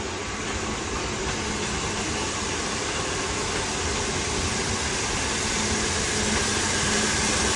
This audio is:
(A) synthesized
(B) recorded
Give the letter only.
B